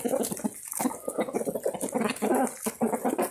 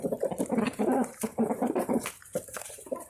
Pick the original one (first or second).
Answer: first